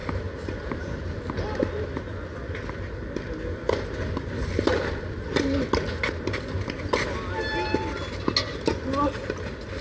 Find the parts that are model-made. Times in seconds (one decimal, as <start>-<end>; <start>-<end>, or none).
none